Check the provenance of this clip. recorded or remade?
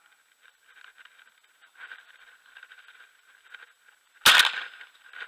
recorded